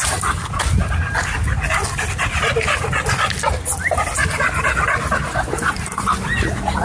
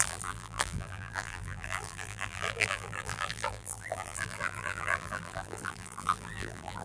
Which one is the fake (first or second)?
second